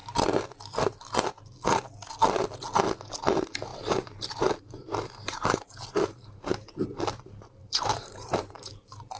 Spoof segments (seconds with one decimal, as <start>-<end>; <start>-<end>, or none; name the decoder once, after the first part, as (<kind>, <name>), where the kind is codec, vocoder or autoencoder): 3.7-6.7 (vocoder, BigVGAN v2); 7.6-8.7